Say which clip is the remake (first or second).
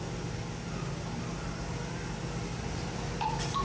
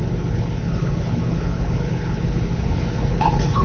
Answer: second